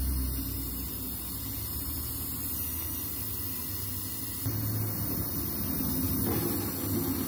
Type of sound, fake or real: real